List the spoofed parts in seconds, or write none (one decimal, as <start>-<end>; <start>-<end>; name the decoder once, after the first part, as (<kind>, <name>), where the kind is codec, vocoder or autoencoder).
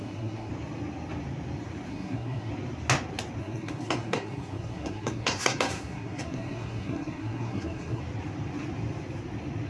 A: 0.0-0.5 (codec, SNAC); 1.9-2.5; 3.4-8.0